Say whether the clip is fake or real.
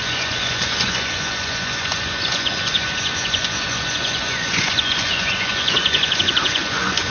fake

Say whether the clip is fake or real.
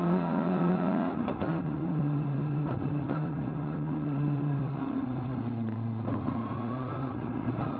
fake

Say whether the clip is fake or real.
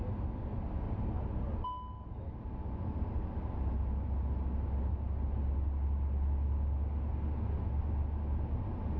real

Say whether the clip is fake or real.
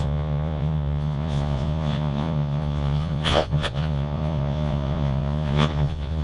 fake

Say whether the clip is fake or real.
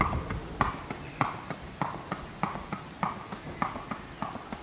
real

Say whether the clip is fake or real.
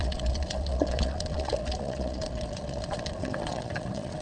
fake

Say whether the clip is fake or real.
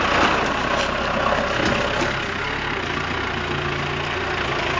real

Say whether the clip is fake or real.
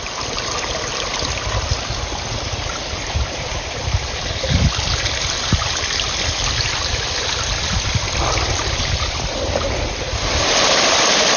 real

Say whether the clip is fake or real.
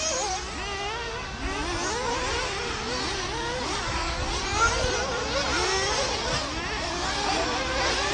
real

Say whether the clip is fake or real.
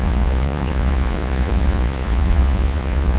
fake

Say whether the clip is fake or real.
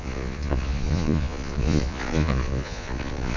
fake